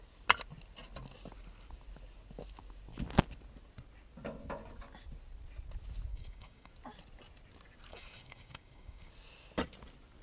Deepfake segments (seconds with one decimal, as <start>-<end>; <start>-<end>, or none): 6.1-6.7; 7.9-9.1